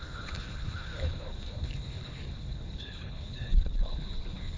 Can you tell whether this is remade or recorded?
remade